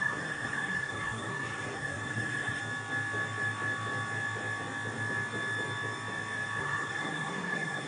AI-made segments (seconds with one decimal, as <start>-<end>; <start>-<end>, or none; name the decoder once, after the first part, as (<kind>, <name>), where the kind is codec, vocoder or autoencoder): 0.0-2.6 (codec, SNAC); 6.6-7.9